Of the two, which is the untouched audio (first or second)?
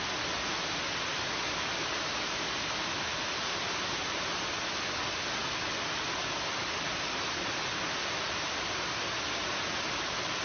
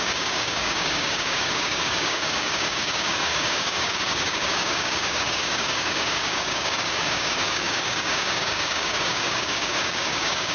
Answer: first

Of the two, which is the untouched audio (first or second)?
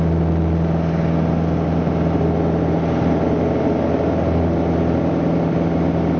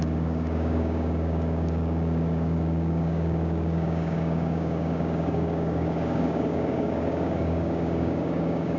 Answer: first